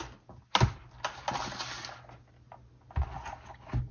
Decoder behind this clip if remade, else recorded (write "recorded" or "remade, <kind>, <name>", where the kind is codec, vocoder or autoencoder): recorded